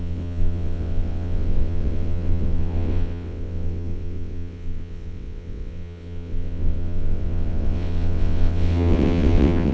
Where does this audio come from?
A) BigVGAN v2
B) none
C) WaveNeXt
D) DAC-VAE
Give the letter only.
C